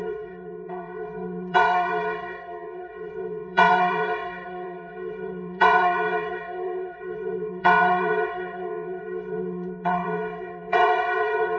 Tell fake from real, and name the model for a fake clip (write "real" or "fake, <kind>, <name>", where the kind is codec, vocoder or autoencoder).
fake, vocoder, WaveNeXt